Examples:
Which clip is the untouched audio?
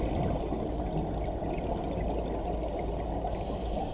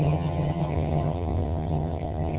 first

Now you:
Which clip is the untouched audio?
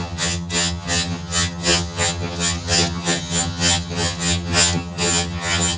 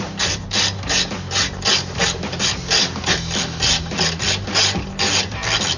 second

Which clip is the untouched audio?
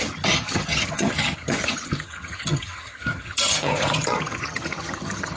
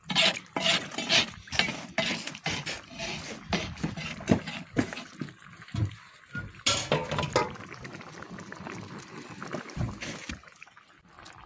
second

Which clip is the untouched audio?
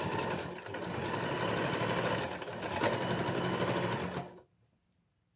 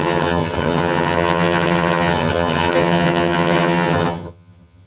first